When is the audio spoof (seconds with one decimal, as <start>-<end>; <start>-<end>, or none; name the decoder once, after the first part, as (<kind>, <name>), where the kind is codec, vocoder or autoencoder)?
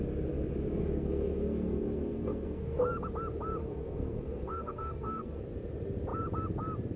0.7-2.8 (codec, SNAC); 3.6-5.4